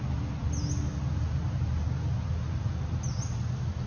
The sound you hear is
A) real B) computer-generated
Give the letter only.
A